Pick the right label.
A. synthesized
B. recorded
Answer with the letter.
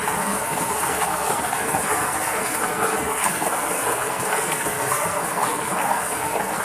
A